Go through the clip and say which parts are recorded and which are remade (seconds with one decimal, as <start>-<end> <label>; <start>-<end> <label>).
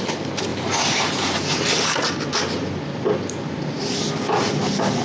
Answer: 0.0-5.0 recorded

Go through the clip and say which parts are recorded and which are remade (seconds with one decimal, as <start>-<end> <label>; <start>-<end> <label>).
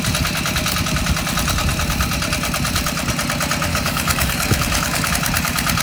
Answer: 0.0-3.7 recorded; 3.7-5.1 remade; 5.1-5.8 recorded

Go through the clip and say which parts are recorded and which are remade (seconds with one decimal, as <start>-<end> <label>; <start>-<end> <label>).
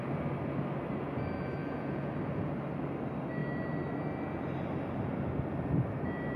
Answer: 0.0-1.6 recorded; 1.6-2.1 remade; 2.1-6.4 recorded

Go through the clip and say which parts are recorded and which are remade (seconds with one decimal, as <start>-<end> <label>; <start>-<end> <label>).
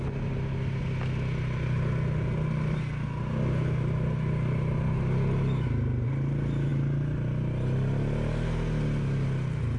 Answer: 0.0-9.8 recorded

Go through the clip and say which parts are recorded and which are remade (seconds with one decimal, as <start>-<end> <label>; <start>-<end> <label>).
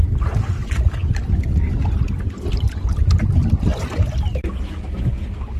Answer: 0.0-5.6 recorded